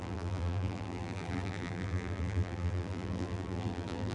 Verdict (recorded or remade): remade